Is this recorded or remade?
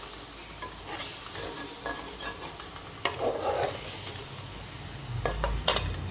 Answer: recorded